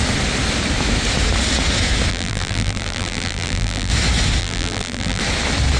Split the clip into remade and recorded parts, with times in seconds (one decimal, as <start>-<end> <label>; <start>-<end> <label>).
0.0-2.1 recorded; 2.1-3.9 remade; 3.9-4.4 recorded; 4.4-5.2 remade; 5.2-5.8 recorded